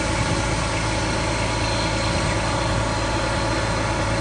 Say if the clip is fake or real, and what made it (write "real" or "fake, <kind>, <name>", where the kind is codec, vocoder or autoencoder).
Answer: real